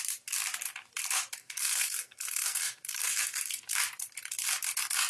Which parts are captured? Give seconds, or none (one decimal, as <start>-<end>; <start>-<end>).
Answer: 0.0-1.4; 3.7-5.1